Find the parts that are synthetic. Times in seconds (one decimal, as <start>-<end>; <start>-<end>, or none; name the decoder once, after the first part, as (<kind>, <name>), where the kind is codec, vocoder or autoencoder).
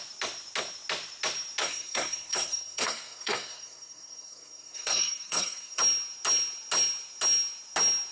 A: 1.6-5.8 (codec, SNAC)